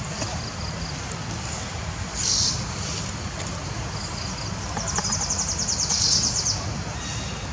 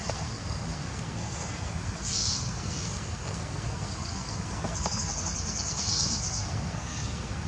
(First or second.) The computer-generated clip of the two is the second